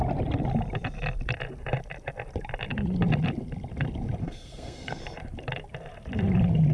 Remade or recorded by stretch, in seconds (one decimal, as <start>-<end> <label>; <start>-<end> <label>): 0.0-4.2 recorded; 4.2-5.0 remade; 5.0-6.7 recorded